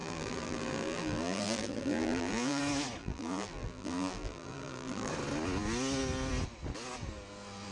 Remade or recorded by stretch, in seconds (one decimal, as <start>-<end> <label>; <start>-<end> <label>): 0.0-2.6 remade; 2.6-3.0 recorded; 3.0-5.1 remade; 5.1-7.7 recorded